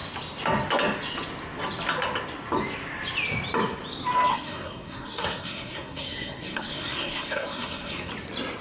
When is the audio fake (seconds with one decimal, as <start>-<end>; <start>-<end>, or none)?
4.3-8.1